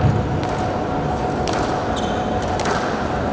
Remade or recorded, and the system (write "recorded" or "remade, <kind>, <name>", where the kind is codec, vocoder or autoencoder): recorded